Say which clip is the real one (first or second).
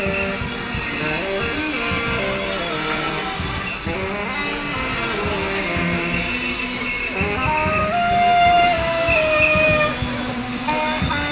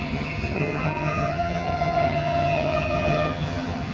first